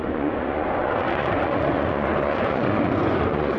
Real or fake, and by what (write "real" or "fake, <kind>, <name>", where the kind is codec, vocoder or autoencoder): fake, vocoder, Vocos